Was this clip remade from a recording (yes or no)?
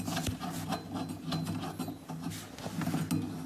no